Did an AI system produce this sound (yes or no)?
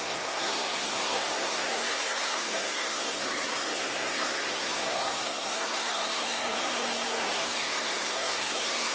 yes